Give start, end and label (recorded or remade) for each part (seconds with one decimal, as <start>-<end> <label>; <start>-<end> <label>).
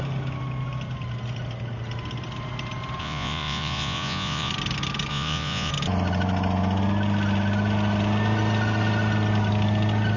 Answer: 0.0-3.0 recorded; 3.0-4.5 remade; 4.5-5.1 recorded; 5.1-5.7 remade; 5.7-10.2 recorded